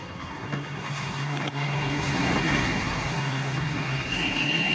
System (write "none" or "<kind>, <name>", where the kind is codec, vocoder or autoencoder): codec, SNAC